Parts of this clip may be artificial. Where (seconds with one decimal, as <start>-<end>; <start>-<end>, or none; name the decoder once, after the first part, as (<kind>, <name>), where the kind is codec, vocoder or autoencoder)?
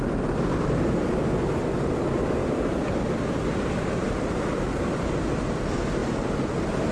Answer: none